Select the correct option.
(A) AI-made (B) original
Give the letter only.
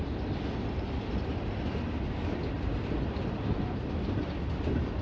B